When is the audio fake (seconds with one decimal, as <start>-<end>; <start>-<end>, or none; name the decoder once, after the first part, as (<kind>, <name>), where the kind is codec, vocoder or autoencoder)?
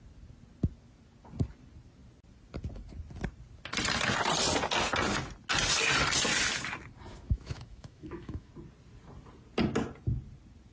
7.1-8.5 (autoencoder, DAC-VAE)